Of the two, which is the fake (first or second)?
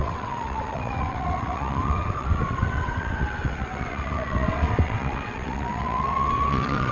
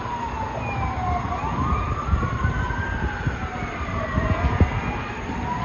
first